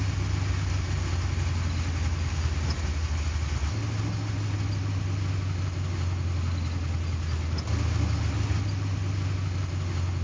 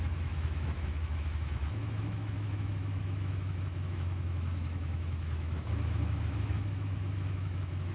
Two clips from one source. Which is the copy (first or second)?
second